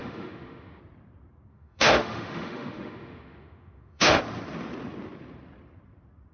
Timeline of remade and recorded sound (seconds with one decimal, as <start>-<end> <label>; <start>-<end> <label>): 0.0-0.8 remade; 0.8-1.5 recorded; 1.5-4.2 remade; 4.2-6.3 recorded